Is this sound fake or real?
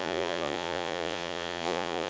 fake